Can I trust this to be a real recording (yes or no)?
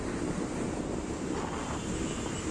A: yes